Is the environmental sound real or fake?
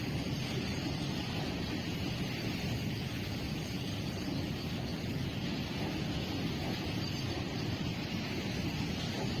real